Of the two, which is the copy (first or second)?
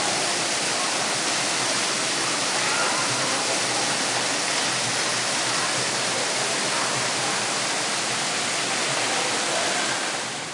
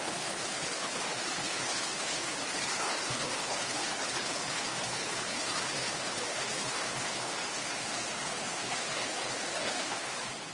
second